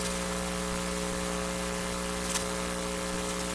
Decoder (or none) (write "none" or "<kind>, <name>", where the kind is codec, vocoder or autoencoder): none